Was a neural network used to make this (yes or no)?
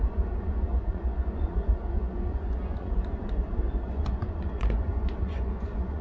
yes